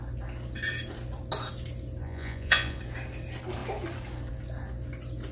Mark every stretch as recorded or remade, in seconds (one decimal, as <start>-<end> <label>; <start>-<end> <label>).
0.0-2.0 recorded; 2.0-2.8 remade; 2.8-5.3 recorded